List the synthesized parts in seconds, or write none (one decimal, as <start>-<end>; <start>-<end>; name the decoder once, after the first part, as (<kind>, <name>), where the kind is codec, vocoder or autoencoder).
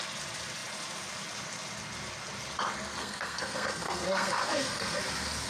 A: 3.0-5.0 (codec, SNAC)